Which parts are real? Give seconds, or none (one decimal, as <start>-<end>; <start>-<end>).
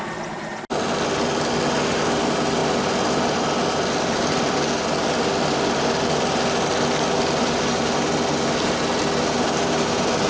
0.0-10.3